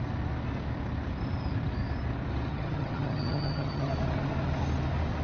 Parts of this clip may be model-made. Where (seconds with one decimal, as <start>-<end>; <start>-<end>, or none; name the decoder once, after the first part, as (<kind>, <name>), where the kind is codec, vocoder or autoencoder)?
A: 2.5-3.9 (vocoder, HiFi-GAN)